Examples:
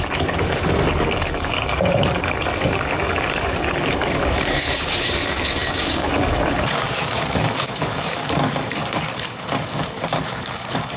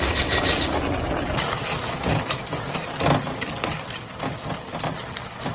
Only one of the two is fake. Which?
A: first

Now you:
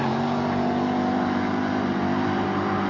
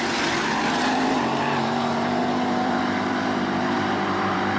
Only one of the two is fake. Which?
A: second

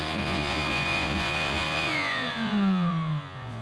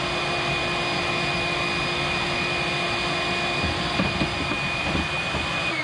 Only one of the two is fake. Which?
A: first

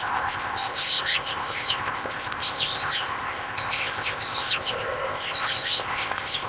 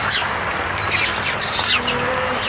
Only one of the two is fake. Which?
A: first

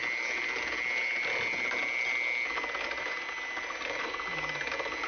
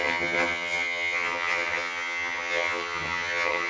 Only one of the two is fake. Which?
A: second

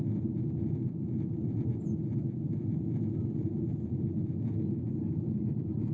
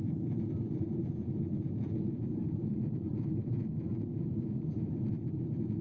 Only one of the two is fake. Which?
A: second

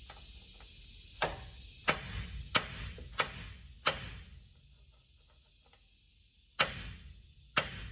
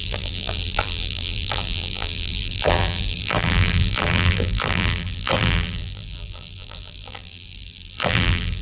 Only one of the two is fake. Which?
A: second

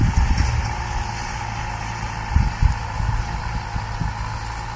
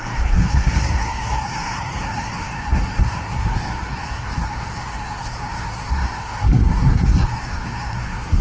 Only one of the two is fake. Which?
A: second